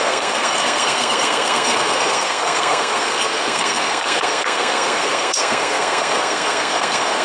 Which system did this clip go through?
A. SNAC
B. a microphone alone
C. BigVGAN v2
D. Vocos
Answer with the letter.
A